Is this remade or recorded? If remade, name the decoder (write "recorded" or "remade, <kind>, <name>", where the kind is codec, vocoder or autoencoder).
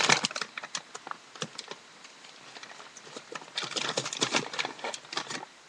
recorded